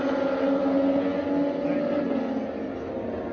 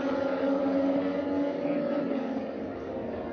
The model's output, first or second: second